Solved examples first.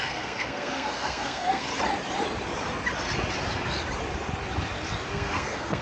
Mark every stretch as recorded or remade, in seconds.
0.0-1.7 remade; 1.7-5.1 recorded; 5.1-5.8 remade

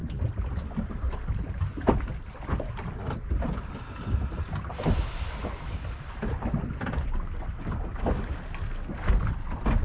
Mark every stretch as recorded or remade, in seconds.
0.0-9.8 recorded

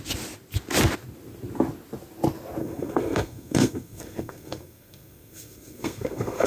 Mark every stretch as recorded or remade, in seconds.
0.0-2.6 recorded; 2.6-6.5 remade

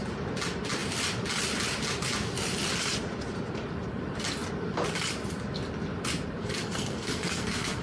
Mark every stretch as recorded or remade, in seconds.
0.0-6.4 recorded; 6.4-7.8 remade